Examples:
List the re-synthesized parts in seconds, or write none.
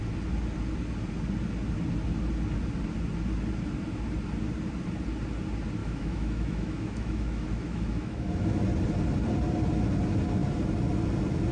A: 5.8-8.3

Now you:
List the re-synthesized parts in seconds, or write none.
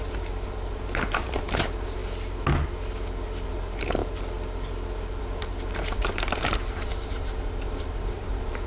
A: 0.0-2.0; 3.5-4.0; 5.2-8.7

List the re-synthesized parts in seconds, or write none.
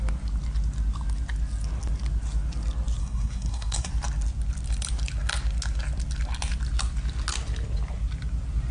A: 3.0-3.9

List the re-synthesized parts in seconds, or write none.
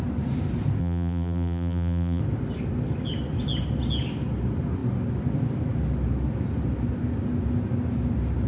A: 0.8-2.2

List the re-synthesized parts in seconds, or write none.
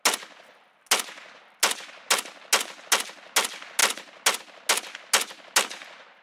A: none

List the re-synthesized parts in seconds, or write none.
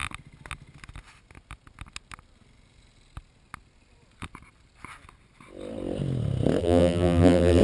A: 6.6-7.6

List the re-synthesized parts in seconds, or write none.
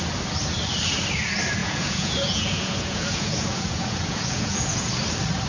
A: 1.6-4.9